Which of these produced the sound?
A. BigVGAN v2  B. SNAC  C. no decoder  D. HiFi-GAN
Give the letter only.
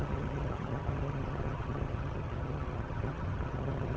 D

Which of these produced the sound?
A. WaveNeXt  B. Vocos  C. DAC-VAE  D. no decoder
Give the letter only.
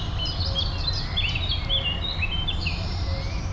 D